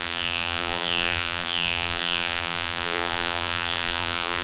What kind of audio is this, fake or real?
fake